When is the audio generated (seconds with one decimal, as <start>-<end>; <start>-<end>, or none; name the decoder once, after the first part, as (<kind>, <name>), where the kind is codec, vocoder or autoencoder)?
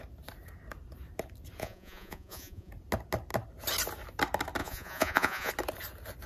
1.6-2.7 (vocoder, Vocos); 4.6-5.5